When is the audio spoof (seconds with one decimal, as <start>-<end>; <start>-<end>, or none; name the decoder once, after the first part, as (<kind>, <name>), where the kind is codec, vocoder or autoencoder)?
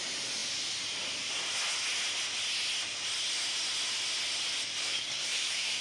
4.8-5.8 (codec, SNAC)